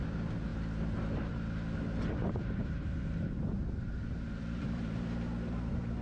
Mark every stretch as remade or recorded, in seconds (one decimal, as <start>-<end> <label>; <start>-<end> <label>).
0.0-2.2 recorded; 2.2-6.0 remade